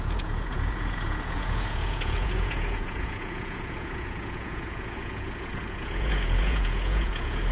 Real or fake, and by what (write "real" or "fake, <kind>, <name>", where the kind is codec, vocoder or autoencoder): fake, vocoder, Vocos